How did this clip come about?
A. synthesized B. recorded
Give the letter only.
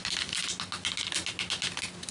B